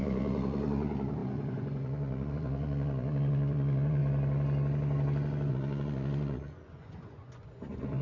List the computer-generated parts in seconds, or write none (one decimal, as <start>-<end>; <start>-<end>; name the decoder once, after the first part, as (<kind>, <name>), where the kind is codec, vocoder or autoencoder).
0.0-4.0 (vocoder, Vocos); 5.5-8.0